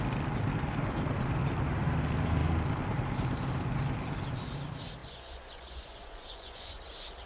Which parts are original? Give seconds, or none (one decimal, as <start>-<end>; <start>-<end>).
0.0-5.0; 6.8-7.3